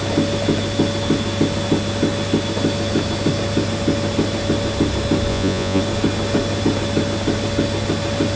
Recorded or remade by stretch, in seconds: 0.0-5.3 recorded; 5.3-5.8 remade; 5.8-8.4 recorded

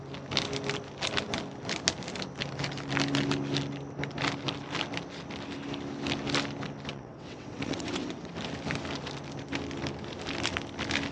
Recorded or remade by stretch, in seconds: 0.0-6.9 recorded; 6.9-8.3 remade; 8.3-11.1 recorded

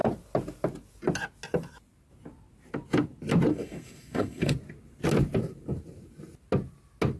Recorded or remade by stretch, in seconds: 0.0-3.5 recorded; 3.5-4.5 remade; 4.5-7.2 recorded

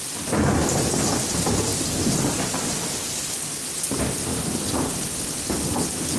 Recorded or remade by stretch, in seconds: 0.0-6.2 recorded

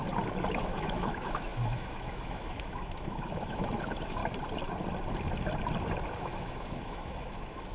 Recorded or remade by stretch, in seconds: 0.0-0.5 recorded; 0.5-4.2 remade; 4.2-6.2 recorded; 6.2-7.7 remade

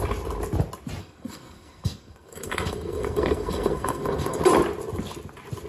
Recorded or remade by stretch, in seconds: 0.0-1.0 recorded; 1.0-4.4 remade; 4.4-5.7 recorded

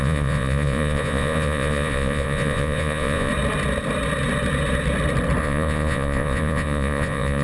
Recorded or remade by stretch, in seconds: 0.0-3.3 remade; 3.3-5.4 recorded; 5.4-7.4 remade

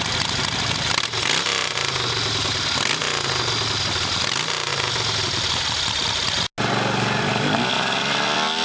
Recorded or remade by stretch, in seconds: 0.0-8.6 recorded